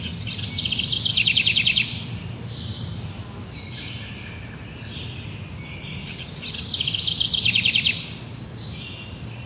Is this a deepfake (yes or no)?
no